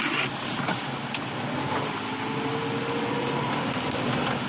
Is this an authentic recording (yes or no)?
yes